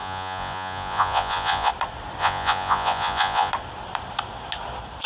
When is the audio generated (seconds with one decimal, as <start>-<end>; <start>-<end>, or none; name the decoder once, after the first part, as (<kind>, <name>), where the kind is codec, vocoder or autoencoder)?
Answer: 0.0-1.7 (vocoder, Vocos); 2.2-3.5